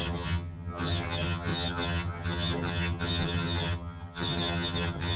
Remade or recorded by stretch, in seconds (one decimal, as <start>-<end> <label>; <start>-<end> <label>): 0.0-5.2 remade